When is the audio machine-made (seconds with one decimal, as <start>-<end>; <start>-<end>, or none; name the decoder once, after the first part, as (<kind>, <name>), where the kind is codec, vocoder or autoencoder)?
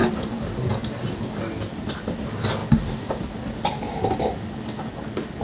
0.0-1.9 (vocoder, BigVGAN v2)